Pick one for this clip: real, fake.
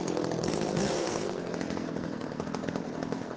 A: fake